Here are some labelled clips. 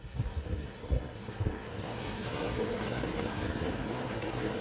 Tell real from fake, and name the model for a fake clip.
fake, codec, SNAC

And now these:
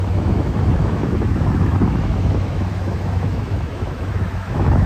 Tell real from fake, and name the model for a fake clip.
fake, autoencoder, DAC-VAE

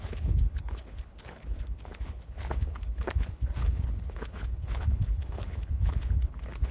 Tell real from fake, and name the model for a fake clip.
fake, codec, HILCodec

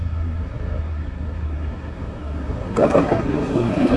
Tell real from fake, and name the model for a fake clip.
fake, codec, SNAC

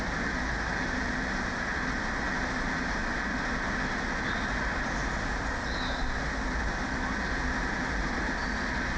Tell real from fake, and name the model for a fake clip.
real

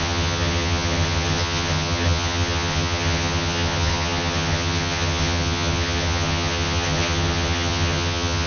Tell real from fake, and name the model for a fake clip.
fake, vocoder, HiFi-GAN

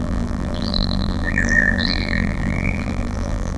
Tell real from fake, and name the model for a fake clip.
fake, vocoder, BigVGAN v2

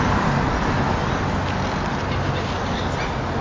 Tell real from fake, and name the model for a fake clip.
real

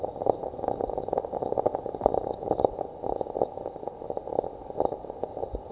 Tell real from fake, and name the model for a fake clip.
real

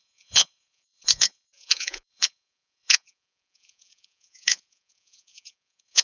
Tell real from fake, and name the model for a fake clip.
fake, vocoder, Vocos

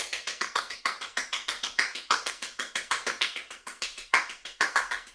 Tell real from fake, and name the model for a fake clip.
fake, codec, SNAC